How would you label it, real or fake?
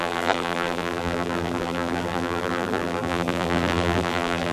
fake